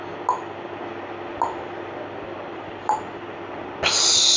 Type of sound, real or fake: real